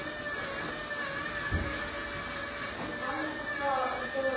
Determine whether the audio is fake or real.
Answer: real